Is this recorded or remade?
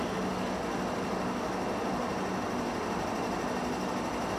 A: recorded